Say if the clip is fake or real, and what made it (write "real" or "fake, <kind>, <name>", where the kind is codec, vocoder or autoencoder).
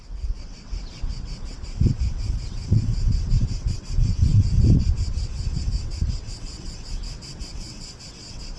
fake, vocoder, WaveNeXt